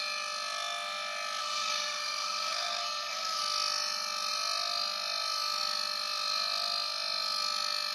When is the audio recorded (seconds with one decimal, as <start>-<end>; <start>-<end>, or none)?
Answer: 0.0-1.4; 3.4-7.9